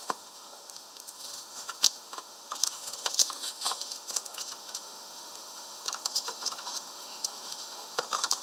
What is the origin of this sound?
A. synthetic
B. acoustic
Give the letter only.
A